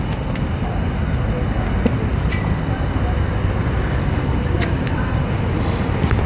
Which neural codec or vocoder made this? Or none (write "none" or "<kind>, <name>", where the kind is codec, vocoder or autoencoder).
none